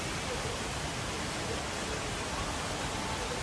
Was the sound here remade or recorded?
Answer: recorded